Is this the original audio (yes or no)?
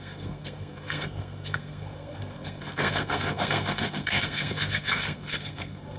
no